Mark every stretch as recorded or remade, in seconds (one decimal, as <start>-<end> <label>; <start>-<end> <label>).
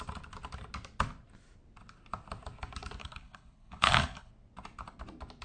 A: 0.0-3.0 recorded; 3.0-4.3 remade; 4.3-5.4 recorded